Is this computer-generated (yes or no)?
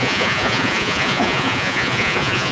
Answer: yes